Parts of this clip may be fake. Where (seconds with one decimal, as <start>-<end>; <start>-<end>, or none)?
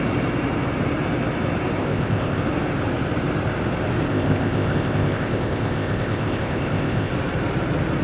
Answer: 1.8-2.4; 4.1-7.1